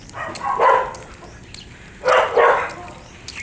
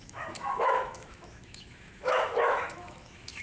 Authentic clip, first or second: first